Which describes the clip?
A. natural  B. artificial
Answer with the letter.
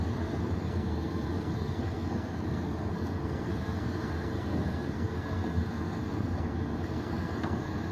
B